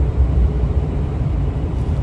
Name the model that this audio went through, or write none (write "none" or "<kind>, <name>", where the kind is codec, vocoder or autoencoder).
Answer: vocoder, BigVGAN v2